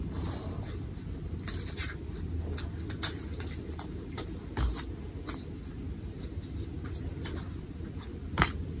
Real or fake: real